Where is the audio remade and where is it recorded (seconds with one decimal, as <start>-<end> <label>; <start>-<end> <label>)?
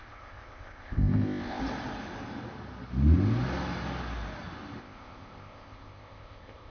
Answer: 0.0-1.6 remade; 1.6-4.8 recorded; 4.8-6.7 remade